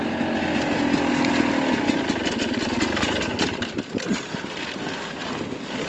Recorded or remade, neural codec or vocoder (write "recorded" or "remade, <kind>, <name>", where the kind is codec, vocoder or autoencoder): recorded